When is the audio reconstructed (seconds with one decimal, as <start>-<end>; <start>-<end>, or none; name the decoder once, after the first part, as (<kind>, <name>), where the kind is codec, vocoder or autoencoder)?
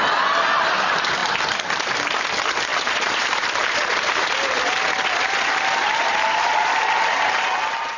2.7-4.6 (vocoder, BigVGAN v2); 5.8-6.5